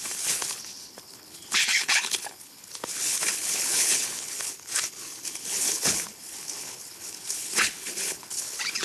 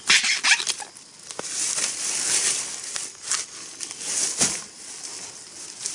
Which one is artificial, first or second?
first